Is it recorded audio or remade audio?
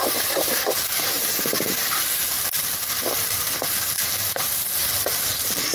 remade